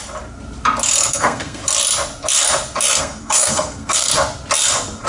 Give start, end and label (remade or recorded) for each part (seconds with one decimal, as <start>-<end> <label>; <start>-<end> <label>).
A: 0.0-1.1 recorded; 1.1-1.6 remade; 1.6-3.0 recorded; 3.0-4.1 remade; 4.1-5.1 recorded